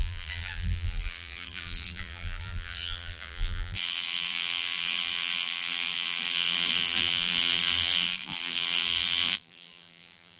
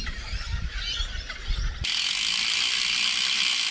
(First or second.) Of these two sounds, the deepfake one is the first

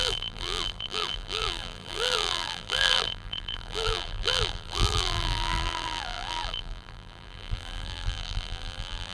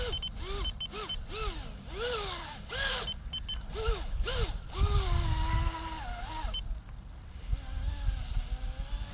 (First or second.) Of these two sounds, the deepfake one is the first